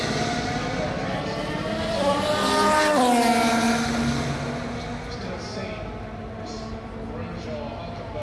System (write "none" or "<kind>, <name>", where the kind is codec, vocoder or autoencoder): none